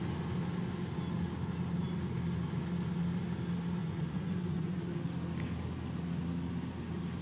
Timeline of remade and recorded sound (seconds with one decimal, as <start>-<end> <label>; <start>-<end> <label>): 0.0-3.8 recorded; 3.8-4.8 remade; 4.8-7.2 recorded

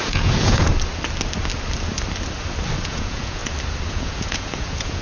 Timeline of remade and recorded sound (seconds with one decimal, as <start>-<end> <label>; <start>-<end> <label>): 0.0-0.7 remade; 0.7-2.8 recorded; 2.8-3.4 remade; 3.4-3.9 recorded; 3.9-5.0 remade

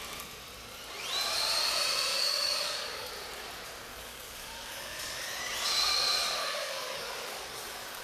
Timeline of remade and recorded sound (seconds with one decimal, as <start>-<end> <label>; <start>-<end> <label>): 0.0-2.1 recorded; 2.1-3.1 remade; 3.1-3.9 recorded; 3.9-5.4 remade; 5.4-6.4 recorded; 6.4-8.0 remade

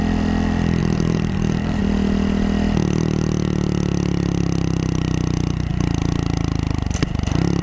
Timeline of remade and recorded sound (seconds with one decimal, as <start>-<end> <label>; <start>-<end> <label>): 0.0-0.8 recorded; 0.8-1.8 remade; 1.8-7.6 recorded

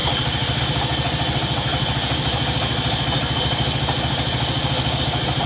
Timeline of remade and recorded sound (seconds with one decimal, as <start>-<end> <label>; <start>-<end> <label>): 0.0-5.5 recorded